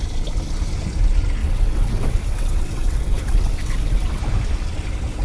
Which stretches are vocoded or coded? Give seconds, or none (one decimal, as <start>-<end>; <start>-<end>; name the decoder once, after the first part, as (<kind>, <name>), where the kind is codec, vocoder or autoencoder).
1.4-4.2 (vocoder, WaveNeXt)